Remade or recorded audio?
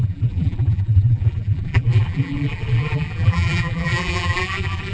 remade